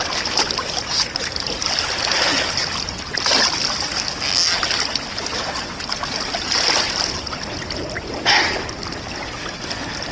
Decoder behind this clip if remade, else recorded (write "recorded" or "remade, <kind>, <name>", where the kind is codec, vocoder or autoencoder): recorded